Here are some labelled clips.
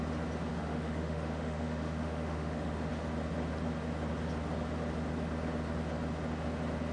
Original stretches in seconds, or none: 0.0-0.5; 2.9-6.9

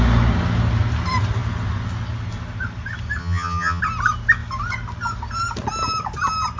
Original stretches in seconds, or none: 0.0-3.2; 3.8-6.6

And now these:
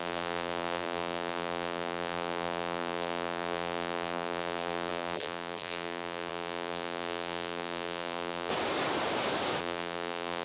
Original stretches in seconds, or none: 8.5-9.6

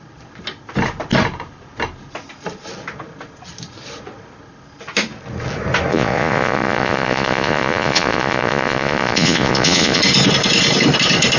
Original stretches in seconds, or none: 0.0-5.9; 10.0-11.4

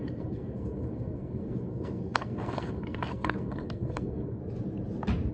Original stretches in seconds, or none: 4.4-5.3